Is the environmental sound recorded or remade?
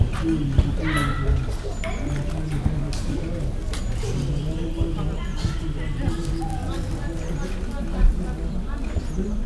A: recorded